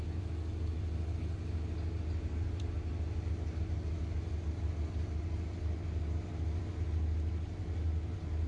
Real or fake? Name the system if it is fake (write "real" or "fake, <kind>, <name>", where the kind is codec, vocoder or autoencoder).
real